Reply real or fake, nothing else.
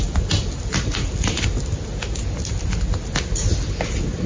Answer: real